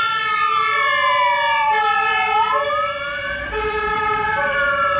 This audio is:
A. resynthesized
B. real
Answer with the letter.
A